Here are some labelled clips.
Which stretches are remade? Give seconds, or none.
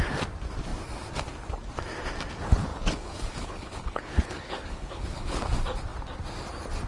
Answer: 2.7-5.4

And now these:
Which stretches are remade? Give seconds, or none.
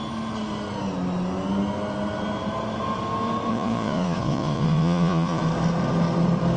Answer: 3.5-5.4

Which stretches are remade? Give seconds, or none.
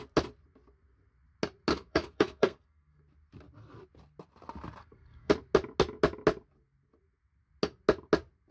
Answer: 1.7-3.0; 4.8-5.3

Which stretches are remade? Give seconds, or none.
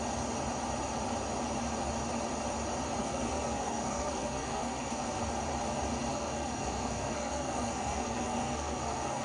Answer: 3.0-5.2; 6.1-9.2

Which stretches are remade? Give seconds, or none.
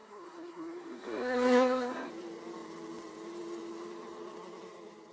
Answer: 0.0-2.1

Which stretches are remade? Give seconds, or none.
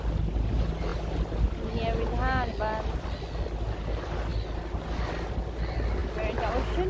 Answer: none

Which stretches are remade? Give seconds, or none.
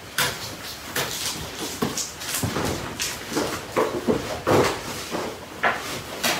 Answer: none